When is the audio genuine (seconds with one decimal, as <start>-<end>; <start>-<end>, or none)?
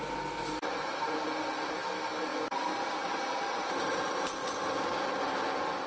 0.0-5.9